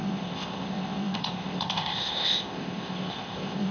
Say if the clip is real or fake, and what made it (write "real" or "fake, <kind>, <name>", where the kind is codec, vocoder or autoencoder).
fake, codec, ZipCodec